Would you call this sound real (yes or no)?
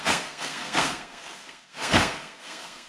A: no